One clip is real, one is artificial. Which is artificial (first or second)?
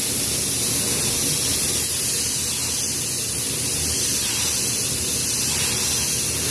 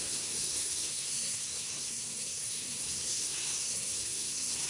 second